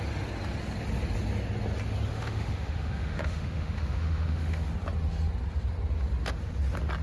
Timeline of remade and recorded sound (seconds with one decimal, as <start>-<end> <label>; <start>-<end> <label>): 0.0-2.1 recorded; 2.1-4.7 remade; 4.7-7.0 recorded